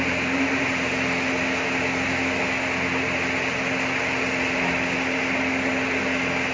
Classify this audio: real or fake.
real